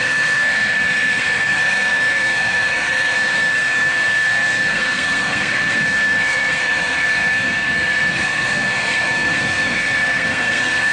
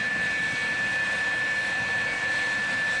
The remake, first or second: first